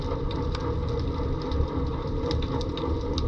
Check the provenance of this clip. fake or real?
real